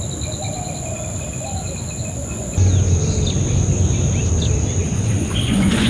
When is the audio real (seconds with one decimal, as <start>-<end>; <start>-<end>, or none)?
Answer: 0.0-2.2; 3.0-4.8